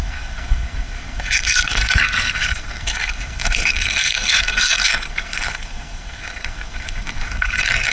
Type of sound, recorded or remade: remade